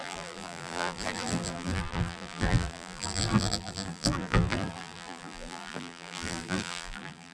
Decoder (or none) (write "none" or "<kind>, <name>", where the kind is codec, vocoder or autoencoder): vocoder, BigVGAN v2